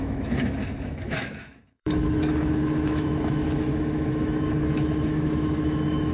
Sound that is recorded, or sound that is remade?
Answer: remade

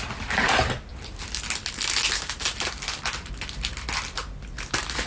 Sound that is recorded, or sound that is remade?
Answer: recorded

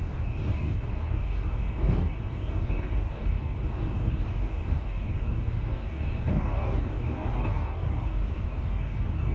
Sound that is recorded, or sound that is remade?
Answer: remade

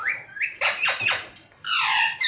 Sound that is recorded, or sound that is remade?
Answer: remade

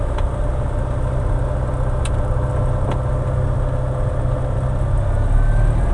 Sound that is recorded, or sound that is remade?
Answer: recorded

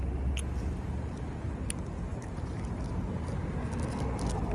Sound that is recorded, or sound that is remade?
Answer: recorded